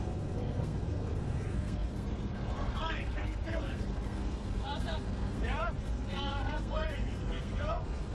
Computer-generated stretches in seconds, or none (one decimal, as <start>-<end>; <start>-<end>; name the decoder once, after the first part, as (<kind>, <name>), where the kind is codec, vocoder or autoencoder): 0.0-8.1 (codec, SNAC)